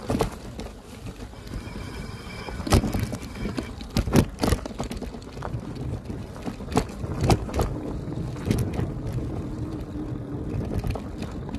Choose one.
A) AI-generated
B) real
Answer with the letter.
B